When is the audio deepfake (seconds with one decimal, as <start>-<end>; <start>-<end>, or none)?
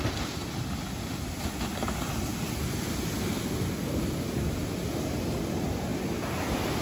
none